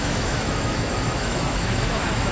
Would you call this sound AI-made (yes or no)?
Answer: yes